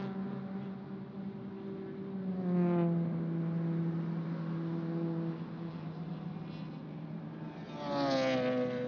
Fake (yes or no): no